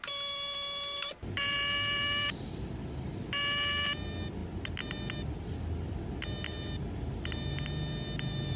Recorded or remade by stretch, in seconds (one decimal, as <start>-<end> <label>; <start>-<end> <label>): 0.0-8.6 recorded